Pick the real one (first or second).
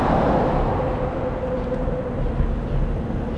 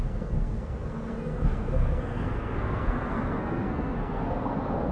first